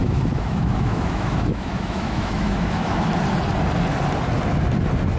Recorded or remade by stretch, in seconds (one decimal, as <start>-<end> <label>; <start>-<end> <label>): 0.0-3.1 remade; 3.1-5.2 recorded